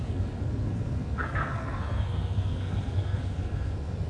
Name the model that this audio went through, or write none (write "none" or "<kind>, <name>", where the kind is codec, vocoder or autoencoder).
codec, SNAC